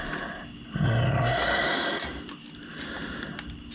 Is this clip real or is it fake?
real